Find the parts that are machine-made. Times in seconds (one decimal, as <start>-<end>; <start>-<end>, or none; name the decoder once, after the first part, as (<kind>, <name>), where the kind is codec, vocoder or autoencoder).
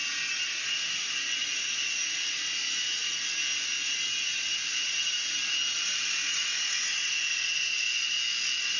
none